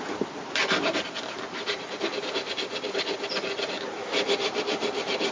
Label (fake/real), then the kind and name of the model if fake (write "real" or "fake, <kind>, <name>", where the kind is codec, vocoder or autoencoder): real